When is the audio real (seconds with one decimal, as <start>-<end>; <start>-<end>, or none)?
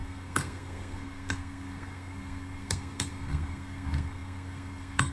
none